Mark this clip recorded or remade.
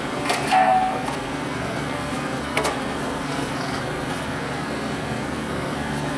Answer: remade